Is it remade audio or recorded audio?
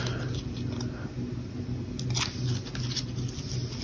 recorded